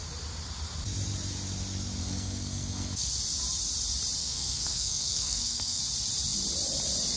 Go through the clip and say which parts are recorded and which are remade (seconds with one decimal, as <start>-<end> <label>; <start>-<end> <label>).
0.0-2.0 recorded; 2.0-3.1 remade; 3.1-4.2 recorded; 4.2-5.8 remade; 5.8-7.2 recorded